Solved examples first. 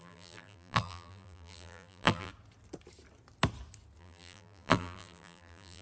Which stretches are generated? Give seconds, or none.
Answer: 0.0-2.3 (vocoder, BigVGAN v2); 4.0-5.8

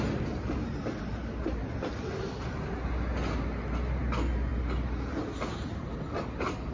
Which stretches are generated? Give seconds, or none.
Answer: 0.8-1.5 (vocoder, BigVGAN v2)

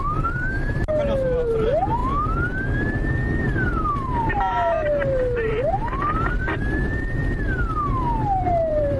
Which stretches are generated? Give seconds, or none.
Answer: 0.0-2.0 (vocoder, BigVGAN v2); 3.4-7.2; 7.9-9.0

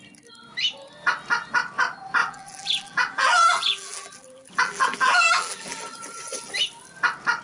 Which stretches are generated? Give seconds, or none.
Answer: 2.2-5.8 (vocoder, BigVGAN v2)

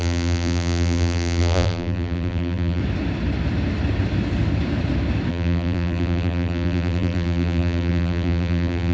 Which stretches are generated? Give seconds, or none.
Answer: 0.0-2.8 (vocoder, BigVGAN v2); 5.3-8.9

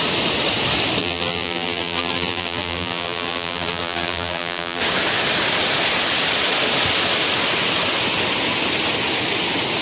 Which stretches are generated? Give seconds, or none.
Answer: 1.0-4.8 (vocoder, BigVGAN v2)